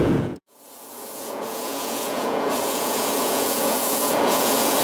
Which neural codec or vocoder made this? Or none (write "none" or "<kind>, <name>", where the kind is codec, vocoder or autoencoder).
vocoder, Vocos